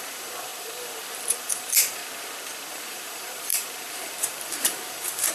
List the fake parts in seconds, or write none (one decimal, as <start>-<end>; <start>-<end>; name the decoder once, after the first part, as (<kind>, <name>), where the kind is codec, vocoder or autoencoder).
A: 0.0-2.0 (vocoder, BigVGAN v2); 2.7-5.3